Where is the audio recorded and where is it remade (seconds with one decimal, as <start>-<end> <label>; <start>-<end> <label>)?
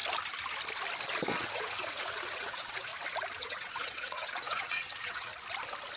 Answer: 0.0-1.4 recorded; 1.4-2.9 remade; 2.9-3.4 recorded; 3.4-5.3 remade; 5.3-6.0 recorded